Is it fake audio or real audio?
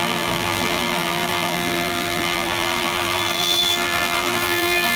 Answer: fake